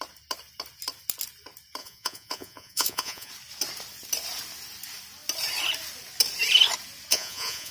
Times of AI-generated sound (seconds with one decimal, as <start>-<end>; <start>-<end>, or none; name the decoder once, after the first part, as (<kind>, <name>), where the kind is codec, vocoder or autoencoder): 1.8-3.3 (vocoder, Vocos); 7.1-7.7